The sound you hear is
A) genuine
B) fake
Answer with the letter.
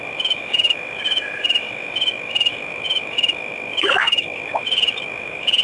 B